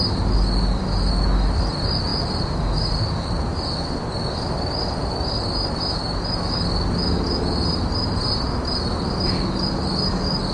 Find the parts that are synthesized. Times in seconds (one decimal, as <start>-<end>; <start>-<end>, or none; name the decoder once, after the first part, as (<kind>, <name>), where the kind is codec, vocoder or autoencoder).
none